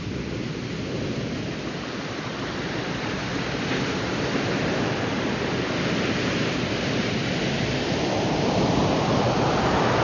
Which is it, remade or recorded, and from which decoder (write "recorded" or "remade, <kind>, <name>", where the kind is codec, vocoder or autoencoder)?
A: remade, vocoder, BigVGAN v2